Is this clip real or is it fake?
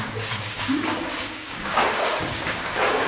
fake